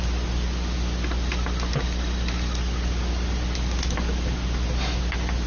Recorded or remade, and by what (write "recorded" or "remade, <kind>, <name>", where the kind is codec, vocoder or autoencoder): recorded